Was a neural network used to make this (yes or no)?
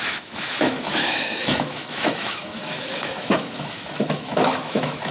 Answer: yes